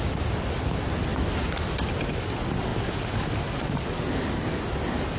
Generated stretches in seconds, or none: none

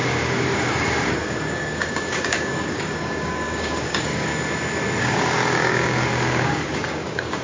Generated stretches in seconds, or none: 0.0-4.3 (codec, DAC); 5.0-7.4

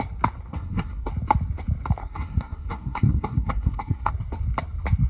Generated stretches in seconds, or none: 0.5-1.1 (codec, SNAC); 2.0-4.1

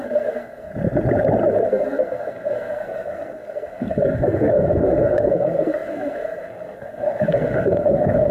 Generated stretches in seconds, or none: 0.0-0.7 (codec, SNAC); 1.5-8.3

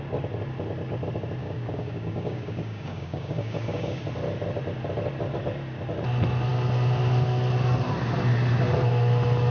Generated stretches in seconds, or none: 1.4-4.0 (codec, DAC)

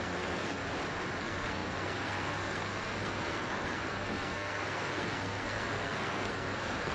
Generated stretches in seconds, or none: 0.0-0.6 (codec, SNAC); 1.2-6.9

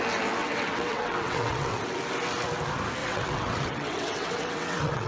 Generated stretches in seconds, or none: 0.4-1.8 (vocoder, WaveNeXt); 3.0-5.1

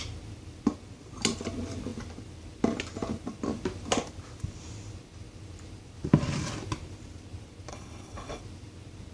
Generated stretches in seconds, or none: 7.7-8.4 (codec, HILCodec)